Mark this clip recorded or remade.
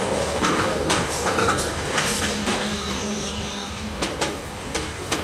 remade